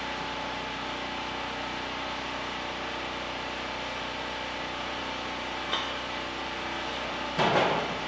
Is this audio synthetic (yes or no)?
no